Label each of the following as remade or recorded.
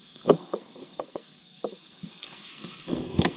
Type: remade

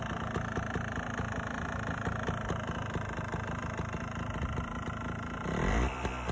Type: recorded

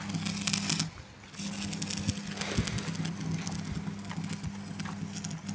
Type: recorded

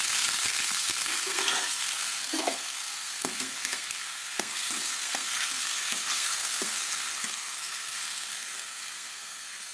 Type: remade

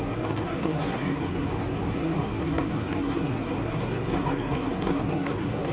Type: remade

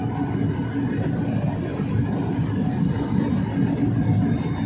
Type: recorded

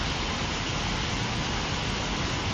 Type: recorded